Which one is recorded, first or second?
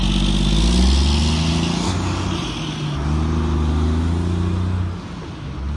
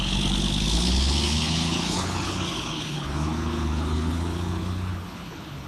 first